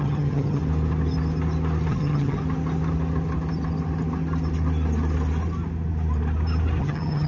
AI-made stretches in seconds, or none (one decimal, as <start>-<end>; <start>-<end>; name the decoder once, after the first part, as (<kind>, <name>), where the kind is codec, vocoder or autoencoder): 0.0-0.6 (vocoder, HiFi-GAN); 1.9-2.4; 6.8-7.3